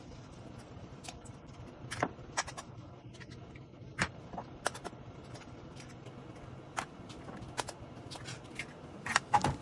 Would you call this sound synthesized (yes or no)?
no